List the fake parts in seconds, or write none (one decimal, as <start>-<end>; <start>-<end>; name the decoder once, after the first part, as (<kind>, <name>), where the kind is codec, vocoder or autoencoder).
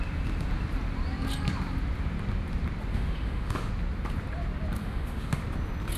2.9-3.7 (autoencoder, DAC-VAE); 4.8-5.4